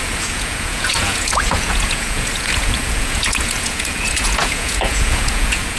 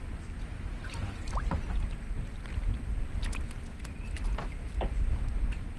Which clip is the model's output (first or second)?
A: first